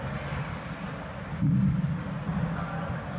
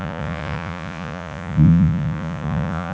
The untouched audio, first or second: first